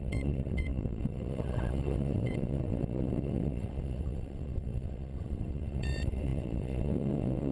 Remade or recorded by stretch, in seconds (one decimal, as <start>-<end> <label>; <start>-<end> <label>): 0.0-7.5 remade